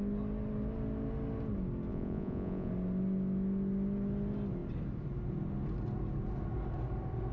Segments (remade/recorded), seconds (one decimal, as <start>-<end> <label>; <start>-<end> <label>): 0.0-1.9 recorded; 1.9-2.7 remade; 2.7-7.3 recorded